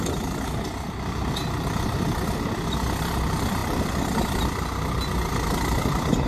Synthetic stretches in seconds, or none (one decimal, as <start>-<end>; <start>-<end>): none